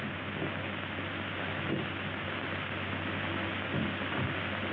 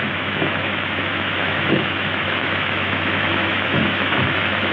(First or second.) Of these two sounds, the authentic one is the first